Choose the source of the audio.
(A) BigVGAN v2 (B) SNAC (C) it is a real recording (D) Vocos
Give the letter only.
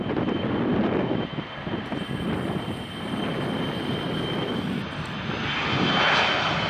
C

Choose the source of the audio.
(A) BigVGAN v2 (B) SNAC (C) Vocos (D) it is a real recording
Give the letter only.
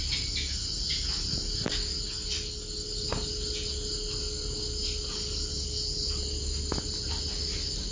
D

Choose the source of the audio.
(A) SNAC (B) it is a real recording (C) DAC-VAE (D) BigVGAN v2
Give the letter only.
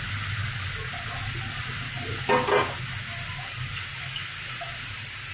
B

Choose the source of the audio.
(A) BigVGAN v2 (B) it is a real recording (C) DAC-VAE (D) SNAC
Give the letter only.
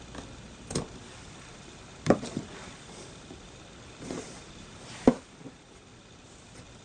A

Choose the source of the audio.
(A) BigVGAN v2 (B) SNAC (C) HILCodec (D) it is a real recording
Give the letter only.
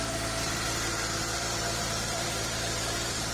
A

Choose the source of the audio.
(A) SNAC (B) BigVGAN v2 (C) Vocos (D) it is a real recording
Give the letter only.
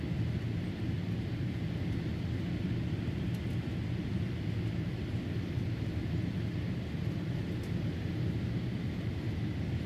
D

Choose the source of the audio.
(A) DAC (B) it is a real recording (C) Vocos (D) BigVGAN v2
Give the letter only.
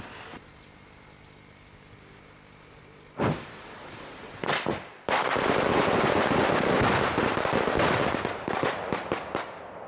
D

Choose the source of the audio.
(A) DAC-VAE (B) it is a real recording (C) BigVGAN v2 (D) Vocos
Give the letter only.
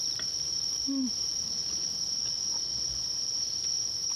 C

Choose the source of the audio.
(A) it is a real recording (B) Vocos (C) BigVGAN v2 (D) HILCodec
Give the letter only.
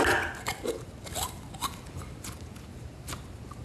A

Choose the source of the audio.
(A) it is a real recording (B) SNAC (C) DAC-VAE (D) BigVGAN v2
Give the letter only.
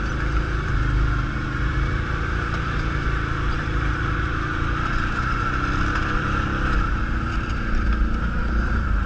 D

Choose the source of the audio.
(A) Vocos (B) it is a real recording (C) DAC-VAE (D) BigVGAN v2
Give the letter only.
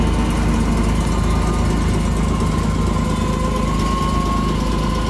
B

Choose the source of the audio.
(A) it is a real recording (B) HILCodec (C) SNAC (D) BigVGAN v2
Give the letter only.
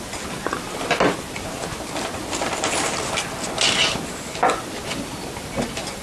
A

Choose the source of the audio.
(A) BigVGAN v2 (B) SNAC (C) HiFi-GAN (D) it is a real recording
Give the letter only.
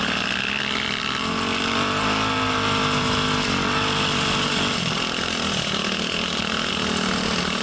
D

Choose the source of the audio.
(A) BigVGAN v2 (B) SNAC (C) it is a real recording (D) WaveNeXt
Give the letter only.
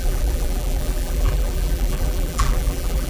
A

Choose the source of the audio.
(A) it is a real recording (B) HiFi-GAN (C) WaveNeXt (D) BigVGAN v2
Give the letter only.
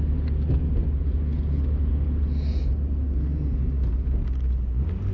A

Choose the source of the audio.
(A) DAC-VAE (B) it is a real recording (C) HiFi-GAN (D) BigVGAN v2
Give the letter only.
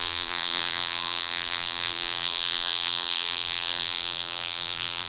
D